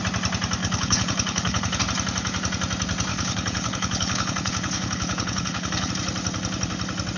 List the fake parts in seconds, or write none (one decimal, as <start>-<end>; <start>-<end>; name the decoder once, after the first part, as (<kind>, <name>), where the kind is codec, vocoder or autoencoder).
0.6-1.8 (codec, HILCodec); 3.1-5.9